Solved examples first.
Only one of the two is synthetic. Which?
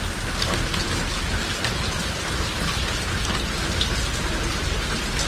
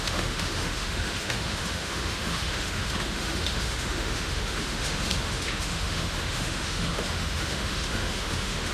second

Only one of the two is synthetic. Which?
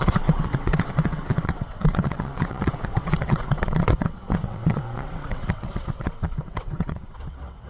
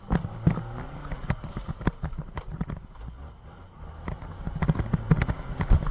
first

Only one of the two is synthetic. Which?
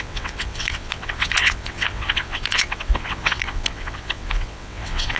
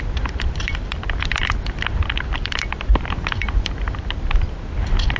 first